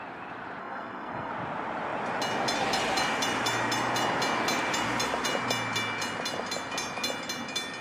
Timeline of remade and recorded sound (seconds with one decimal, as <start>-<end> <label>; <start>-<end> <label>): 0.0-0.6 recorded; 0.6-1.3 remade; 1.3-7.8 recorded